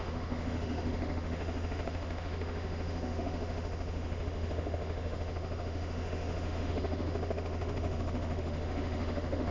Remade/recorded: remade